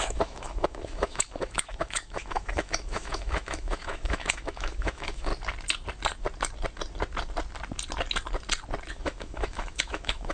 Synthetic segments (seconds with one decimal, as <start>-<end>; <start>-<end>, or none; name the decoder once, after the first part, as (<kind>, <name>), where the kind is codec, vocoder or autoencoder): 0.0-5.3 (autoencoder, DAC-VAE); 8.9-10.3